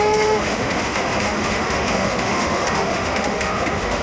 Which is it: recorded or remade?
remade